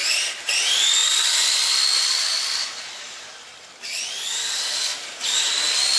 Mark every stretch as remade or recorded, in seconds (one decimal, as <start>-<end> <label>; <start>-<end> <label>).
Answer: 0.0-0.5 remade; 0.5-1.0 recorded; 1.0-4.6 remade; 4.6-6.0 recorded